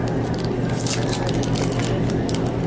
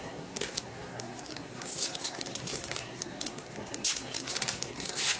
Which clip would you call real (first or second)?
first